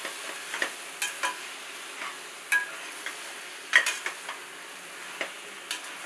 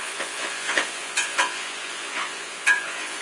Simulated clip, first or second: second